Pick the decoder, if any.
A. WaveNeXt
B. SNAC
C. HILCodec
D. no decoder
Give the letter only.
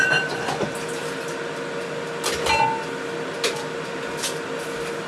D